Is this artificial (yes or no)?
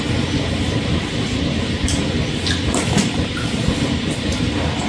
no